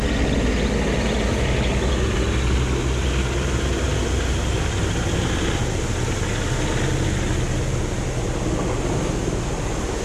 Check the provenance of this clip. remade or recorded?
recorded